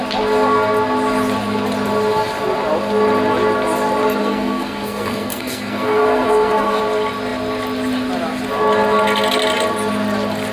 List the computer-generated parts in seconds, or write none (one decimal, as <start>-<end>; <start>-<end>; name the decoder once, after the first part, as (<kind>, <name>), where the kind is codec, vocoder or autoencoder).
4.2-6.8 (codec, SNAC)